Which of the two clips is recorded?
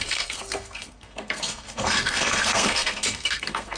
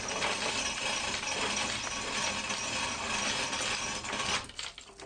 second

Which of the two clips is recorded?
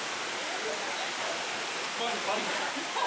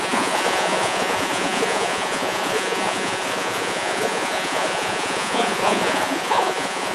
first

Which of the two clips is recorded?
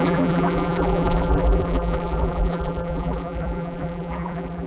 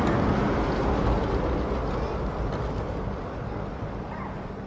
second